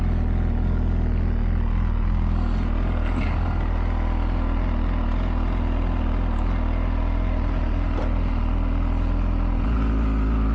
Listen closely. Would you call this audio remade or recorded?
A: recorded